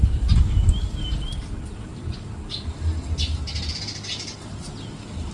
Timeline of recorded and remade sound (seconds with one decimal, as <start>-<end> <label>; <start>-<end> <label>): 0.0-5.3 recorded